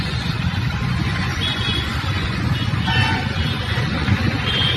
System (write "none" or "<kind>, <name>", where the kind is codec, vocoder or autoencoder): vocoder, Vocos